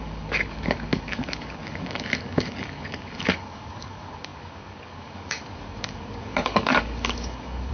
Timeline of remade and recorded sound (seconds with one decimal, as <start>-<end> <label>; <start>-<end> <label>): 0.0-7.7 remade